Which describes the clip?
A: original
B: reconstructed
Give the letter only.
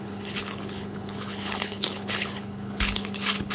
B